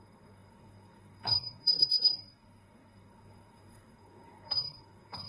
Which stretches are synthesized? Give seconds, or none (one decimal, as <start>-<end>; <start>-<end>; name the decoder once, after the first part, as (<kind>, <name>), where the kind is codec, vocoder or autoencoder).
0.0-5.3 (codec, SNAC)